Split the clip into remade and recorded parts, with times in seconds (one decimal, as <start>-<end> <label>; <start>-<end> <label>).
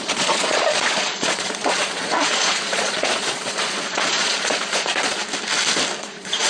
0.0-5.2 remade; 5.2-6.0 recorded; 6.0-6.5 remade